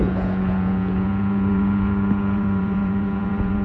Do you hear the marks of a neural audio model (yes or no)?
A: yes